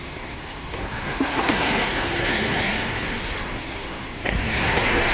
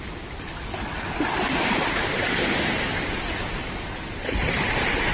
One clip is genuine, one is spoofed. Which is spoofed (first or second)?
first